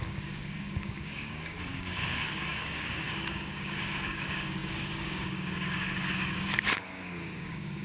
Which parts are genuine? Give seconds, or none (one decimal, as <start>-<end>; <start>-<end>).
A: none